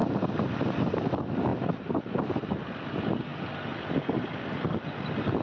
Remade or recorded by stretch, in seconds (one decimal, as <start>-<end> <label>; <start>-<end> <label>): 0.0-5.4 recorded